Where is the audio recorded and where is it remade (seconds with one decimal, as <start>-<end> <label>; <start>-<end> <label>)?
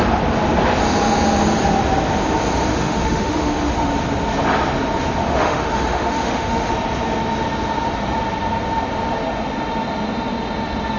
0.0-2.7 recorded; 2.7-3.9 remade; 3.9-5.2 recorded; 5.2-6.7 remade; 6.7-11.0 recorded